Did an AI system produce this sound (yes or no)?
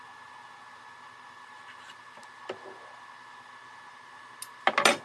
no